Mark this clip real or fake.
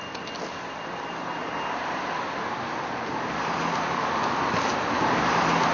real